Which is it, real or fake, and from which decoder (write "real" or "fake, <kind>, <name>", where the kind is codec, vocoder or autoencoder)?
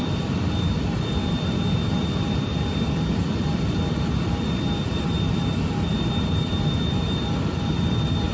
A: fake, vocoder, BigVGAN v2